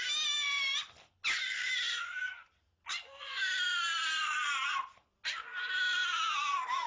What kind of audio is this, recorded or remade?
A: recorded